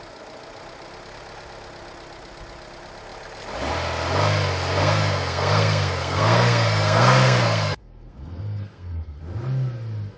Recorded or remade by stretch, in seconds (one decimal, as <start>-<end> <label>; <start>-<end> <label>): 0.0-4.8 recorded; 4.8-9.2 remade; 9.2-10.2 recorded